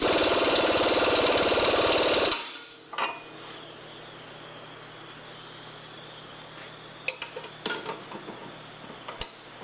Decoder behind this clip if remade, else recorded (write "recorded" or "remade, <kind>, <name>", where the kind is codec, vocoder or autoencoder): recorded